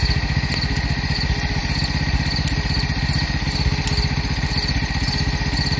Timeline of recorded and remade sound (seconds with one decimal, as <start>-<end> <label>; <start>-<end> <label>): 0.0-5.8 recorded